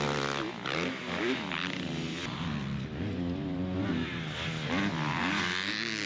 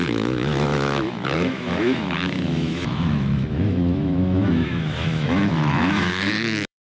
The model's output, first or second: second